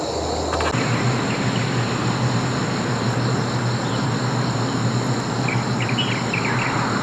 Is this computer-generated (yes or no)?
no